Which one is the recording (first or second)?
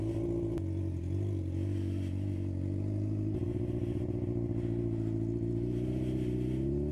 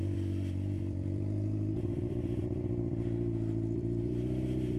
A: first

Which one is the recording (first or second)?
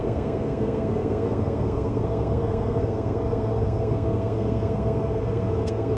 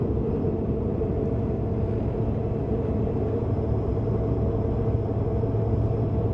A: second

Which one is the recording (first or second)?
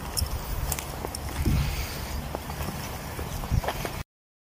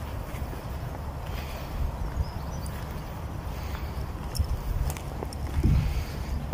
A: first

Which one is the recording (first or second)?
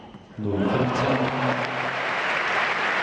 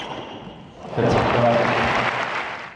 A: second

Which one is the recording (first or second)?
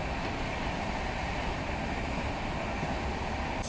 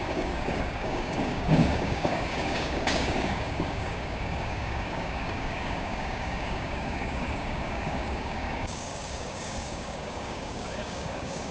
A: first